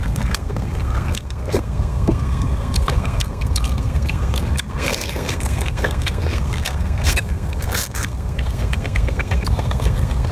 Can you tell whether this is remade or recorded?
remade